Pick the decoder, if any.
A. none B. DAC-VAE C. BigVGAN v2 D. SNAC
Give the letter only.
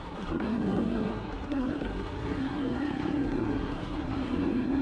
D